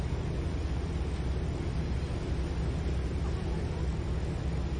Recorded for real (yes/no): yes